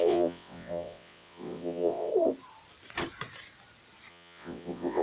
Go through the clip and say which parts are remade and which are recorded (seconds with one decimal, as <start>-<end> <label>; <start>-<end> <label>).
0.0-2.1 remade; 2.1-4.1 recorded; 4.1-5.0 remade